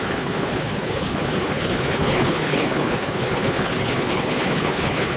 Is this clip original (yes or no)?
no